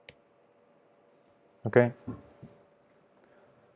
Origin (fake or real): real